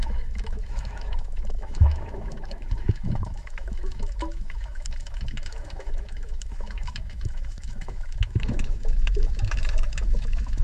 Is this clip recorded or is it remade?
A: remade